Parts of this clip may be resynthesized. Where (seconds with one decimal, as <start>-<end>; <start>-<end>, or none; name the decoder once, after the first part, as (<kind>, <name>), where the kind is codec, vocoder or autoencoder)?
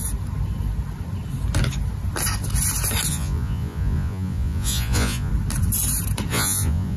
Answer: 3.1-5.3 (vocoder, Vocos); 6.3-7.0